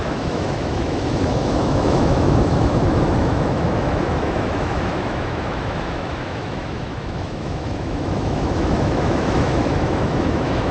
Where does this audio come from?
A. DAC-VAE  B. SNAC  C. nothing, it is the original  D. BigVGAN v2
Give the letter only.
A